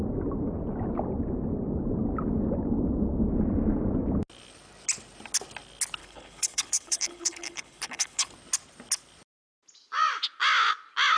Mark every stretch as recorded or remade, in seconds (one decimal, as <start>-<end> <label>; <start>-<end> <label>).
0.0-6.0 recorded; 6.0-8.3 remade; 8.3-11.2 recorded

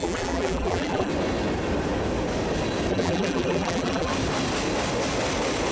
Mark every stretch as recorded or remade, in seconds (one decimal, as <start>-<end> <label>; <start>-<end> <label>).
0.0-1.1 remade; 1.1-2.9 recorded; 2.9-4.1 remade; 4.1-5.7 recorded

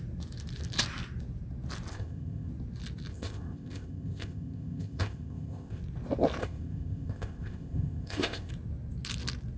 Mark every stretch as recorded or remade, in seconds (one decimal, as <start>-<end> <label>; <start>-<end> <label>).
0.0-1.9 recorded; 1.9-2.5 remade; 2.5-3.1 recorded; 3.1-5.8 remade; 5.8-6.4 recorded; 6.4-8.5 remade; 8.5-9.6 recorded

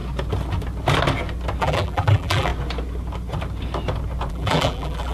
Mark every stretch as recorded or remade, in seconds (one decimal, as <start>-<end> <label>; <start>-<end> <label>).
0.0-1.6 recorded; 1.6-2.5 remade; 2.5-4.3 recorded; 4.3-5.1 remade

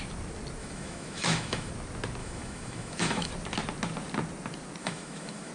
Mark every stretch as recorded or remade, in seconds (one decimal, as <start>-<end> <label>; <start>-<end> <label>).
0.0-0.6 recorded; 0.6-1.7 remade; 1.7-2.2 recorded; 2.2-3.3 remade; 3.3-4.8 recorded; 4.8-5.5 remade

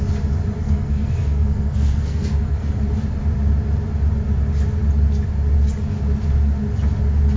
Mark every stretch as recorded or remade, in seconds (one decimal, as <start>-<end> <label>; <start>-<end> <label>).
0.0-0.6 recorded; 0.6-2.8 remade; 2.8-7.4 recorded

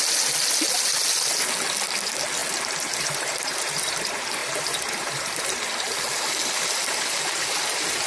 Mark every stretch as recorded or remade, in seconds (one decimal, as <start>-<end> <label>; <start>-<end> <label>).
0.0-2.4 recorded; 2.4-4.0 remade; 4.0-4.4 recorded; 4.4-5.6 remade; 5.6-8.1 recorded